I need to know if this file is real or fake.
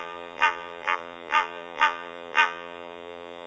fake